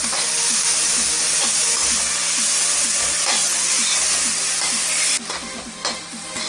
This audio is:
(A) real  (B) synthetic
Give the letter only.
A